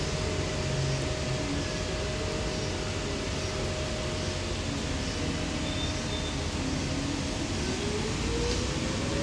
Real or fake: real